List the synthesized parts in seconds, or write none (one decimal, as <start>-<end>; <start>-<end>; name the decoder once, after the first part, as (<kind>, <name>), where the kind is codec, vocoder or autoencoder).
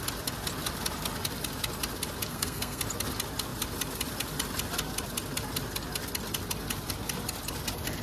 2.3-2.8 (codec, SNAC)